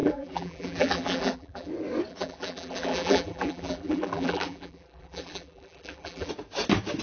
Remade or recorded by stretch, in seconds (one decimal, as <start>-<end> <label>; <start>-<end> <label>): 0.0-1.7 remade; 1.7-2.1 recorded; 2.1-6.3 remade; 6.3-7.0 recorded